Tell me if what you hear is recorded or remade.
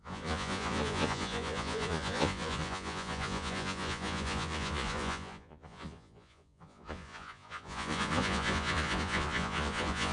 remade